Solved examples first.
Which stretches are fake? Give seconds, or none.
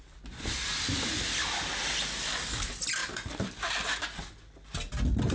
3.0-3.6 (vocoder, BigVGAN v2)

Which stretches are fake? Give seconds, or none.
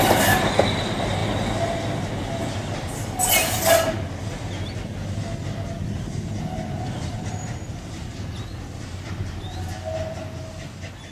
none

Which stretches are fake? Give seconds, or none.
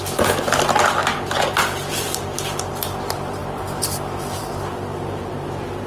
1.0-2.7 (vocoder, BigVGAN v2); 4.9-5.5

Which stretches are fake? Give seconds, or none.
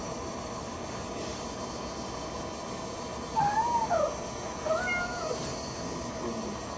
0.0-1.3 (vocoder, BigVGAN v2); 5.4-6.8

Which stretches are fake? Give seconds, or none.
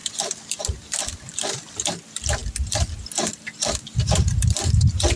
0.0-5.2 (vocoder, BigVGAN v2)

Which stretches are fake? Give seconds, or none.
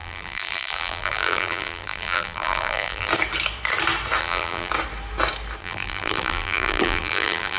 0.0-3.1 (vocoder, BigVGAN v2); 4.2-4.7; 5.6-7.6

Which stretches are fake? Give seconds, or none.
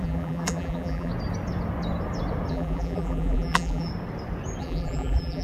0.0-1.1 (vocoder, BigVGAN v2); 2.5-3.9; 4.6-5.4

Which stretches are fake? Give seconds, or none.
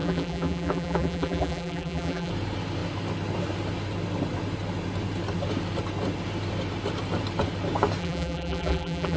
0.0-2.3 (vocoder, BigVGAN v2); 8.0-9.2